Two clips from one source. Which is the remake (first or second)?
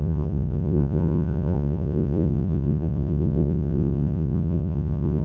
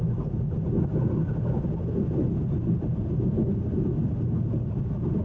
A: first